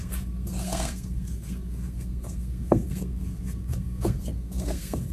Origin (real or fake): fake